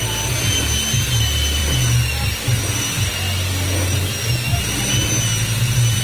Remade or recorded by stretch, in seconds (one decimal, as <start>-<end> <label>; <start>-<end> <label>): 0.0-6.0 recorded